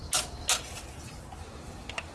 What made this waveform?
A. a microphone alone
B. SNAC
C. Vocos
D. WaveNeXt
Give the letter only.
A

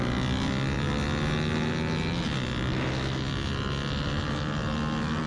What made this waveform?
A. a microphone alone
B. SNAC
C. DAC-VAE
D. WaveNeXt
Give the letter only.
A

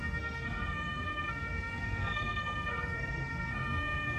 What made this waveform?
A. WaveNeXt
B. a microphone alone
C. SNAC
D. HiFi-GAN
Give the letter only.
C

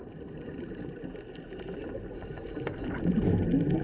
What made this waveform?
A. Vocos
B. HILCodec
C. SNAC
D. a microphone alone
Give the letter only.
D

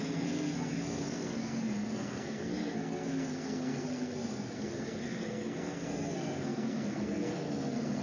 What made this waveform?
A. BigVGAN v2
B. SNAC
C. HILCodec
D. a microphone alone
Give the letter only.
B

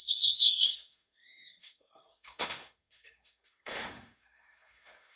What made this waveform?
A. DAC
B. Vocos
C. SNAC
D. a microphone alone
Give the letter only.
C